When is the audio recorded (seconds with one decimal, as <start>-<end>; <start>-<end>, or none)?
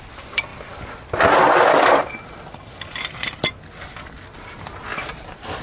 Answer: 0.0-5.6